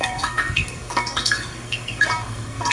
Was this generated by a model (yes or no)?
yes